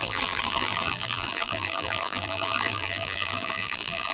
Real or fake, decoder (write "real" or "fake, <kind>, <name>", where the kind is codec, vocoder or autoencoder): fake, vocoder, BigVGAN v2